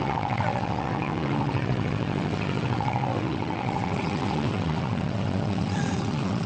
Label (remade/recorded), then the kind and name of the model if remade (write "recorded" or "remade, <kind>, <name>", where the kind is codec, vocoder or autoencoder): remade, vocoder, WaveNeXt